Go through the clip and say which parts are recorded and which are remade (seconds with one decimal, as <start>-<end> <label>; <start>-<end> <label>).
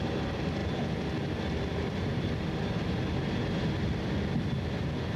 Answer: 0.0-5.2 recorded